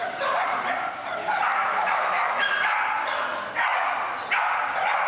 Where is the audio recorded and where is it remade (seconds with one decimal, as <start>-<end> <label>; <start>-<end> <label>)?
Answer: 0.0-1.6 recorded; 1.6-2.5 remade; 2.5-5.1 recorded